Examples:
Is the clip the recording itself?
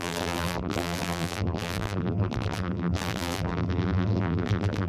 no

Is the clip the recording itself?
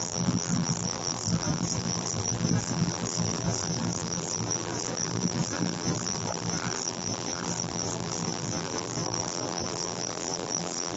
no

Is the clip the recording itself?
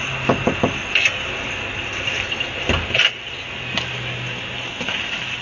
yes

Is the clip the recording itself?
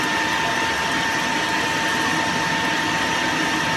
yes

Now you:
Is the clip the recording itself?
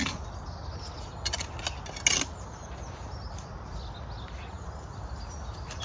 yes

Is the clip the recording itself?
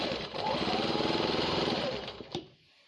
no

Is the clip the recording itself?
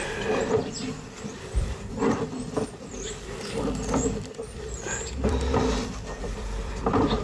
no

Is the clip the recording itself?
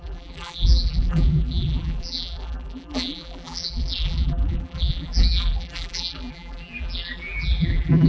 no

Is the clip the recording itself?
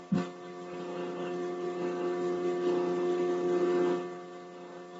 yes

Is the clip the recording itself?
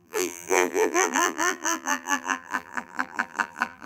no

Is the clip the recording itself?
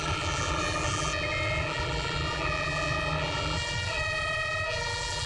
no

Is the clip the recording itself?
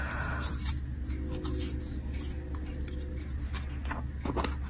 yes